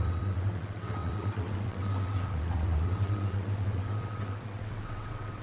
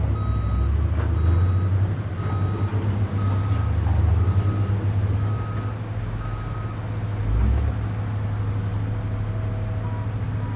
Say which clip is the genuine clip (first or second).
second